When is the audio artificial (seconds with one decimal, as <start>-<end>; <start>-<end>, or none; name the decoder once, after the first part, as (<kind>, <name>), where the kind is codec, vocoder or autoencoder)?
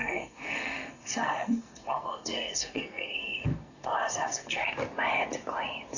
0.0-4.6 (codec, SNAC)